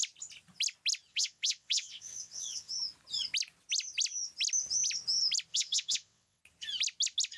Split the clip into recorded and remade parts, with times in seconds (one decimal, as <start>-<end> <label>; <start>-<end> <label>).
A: 0.0-1.1 recorded; 1.1-2.7 remade; 2.7-5.5 recorded; 5.5-6.4 remade; 6.4-7.4 recorded